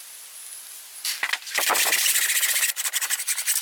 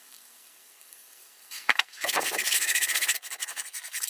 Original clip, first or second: first